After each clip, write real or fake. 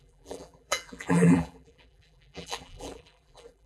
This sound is fake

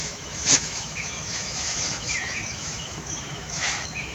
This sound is fake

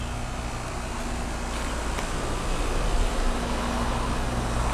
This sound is real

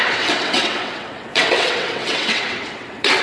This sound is fake